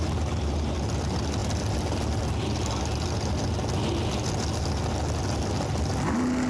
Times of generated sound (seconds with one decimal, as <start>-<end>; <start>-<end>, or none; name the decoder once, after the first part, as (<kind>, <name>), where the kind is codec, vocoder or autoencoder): none